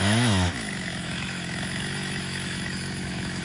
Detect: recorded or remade remade